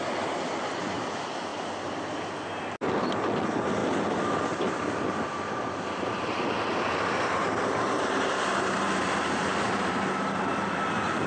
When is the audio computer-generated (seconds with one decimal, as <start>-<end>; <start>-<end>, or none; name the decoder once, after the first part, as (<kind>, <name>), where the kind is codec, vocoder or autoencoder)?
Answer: 1.5-2.6 (vocoder, BigVGAN v2); 3.8-6.0; 9.5-10.1